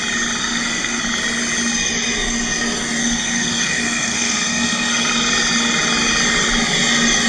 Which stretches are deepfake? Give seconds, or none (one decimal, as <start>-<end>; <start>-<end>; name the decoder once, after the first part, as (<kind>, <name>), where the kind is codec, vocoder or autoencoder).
0.4-1.0 (codec, SNAC); 3.0-5.1